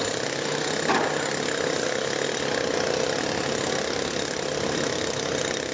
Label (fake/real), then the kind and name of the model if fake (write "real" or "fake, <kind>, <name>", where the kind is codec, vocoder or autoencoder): real